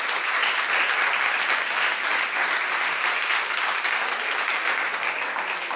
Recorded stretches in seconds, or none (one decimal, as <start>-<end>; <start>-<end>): 0.0-5.8